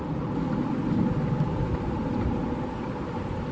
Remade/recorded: recorded